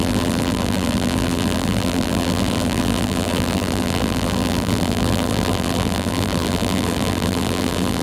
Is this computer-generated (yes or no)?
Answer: yes